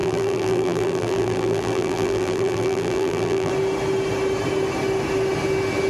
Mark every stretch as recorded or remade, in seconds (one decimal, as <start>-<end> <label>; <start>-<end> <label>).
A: 0.0-3.5 remade; 3.5-5.9 recorded